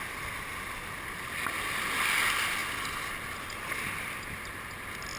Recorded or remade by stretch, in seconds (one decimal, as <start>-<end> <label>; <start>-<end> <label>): 0.0-5.2 recorded